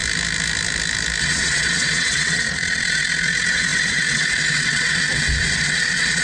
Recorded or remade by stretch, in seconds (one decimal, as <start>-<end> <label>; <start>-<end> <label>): 0.0-1.2 recorded; 1.2-6.2 remade